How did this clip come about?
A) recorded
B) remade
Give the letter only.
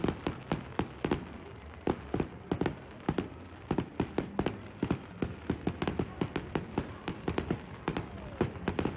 A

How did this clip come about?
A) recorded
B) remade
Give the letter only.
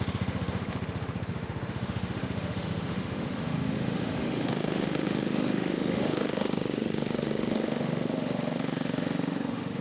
B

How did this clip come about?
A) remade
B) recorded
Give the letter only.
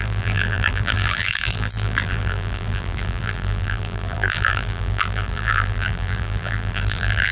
A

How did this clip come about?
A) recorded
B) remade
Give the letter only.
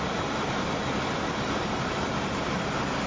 A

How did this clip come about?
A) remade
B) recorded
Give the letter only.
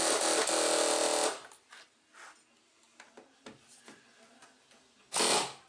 B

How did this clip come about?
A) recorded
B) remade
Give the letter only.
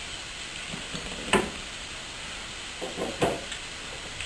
A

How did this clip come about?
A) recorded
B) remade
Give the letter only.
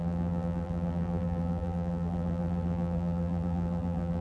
B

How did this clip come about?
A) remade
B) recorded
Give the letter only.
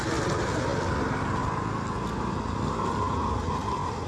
B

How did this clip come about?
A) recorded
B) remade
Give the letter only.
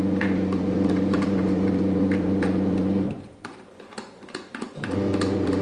B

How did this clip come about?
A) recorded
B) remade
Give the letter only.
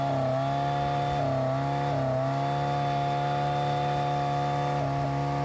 A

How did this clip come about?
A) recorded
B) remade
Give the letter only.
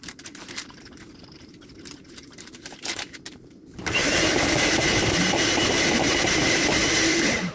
B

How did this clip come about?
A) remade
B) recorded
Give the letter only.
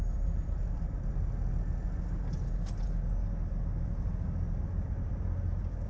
B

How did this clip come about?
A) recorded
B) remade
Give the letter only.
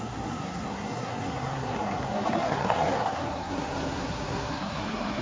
B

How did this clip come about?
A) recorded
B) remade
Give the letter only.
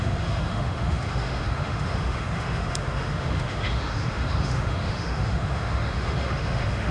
B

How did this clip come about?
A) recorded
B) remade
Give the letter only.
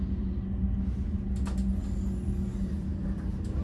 A